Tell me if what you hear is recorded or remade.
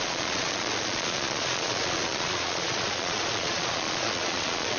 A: remade